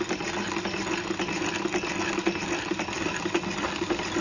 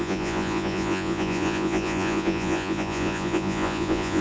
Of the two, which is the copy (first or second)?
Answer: second